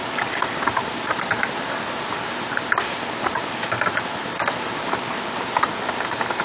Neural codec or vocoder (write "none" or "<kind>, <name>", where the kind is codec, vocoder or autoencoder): none